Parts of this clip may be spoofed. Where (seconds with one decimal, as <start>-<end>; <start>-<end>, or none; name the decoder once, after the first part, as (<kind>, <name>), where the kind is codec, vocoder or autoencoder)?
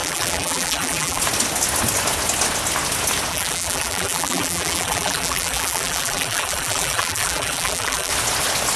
0.0-1.2 (vocoder, BigVGAN v2); 3.3-8.1